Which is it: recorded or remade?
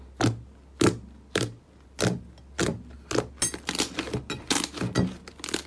recorded